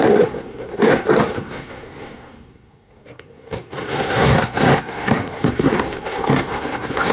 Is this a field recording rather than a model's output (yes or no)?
no